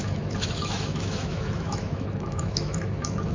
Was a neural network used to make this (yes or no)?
yes